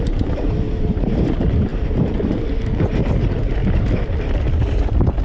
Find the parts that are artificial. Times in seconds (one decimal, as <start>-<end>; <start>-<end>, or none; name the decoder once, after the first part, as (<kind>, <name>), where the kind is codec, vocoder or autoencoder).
0.0-3.6 (vocoder, BigVGAN v2)